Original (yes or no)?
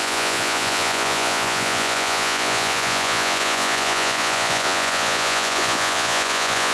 no